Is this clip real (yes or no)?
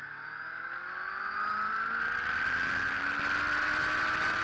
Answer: yes